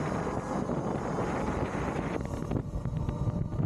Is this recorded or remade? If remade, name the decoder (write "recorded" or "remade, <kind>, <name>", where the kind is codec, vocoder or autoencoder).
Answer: recorded